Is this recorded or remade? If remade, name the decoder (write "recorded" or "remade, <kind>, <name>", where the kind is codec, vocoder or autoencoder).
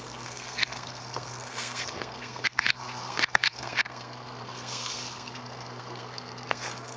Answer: remade, codec, SNAC